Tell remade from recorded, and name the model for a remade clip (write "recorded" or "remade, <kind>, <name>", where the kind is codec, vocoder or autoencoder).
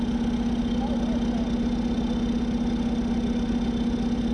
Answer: recorded